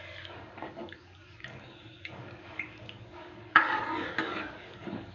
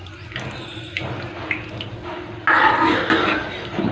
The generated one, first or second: first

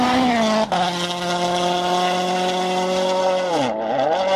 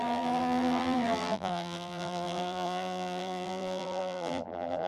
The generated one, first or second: second